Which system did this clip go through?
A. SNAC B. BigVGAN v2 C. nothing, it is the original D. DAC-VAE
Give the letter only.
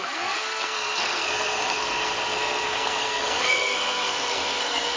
A